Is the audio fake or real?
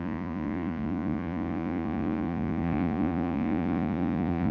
fake